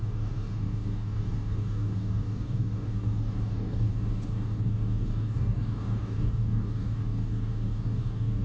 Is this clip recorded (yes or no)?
no